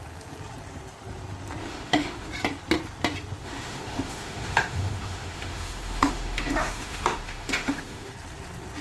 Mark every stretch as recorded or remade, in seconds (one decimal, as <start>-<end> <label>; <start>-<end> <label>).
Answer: 0.0-1.6 recorded; 1.6-2.3 remade; 2.3-3.4 recorded; 3.4-8.1 remade; 8.1-8.8 recorded